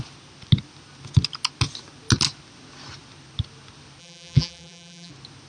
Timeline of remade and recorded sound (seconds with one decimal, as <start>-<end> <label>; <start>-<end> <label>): 0.0-4.0 recorded; 4.0-5.1 remade; 5.1-5.5 recorded